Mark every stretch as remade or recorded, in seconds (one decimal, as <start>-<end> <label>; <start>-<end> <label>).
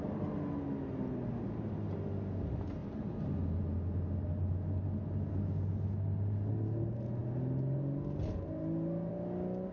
0.0-9.7 recorded